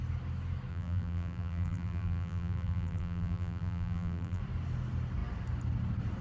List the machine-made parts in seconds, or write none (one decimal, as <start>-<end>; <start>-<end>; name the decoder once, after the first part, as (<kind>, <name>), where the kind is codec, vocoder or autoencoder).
0.7-4.4 (vocoder, BigVGAN v2)